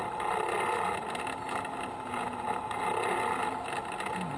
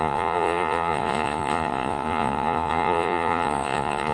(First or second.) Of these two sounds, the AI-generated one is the second